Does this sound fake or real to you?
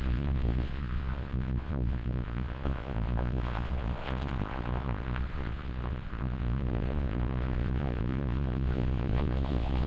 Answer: fake